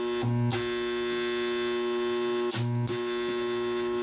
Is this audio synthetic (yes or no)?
no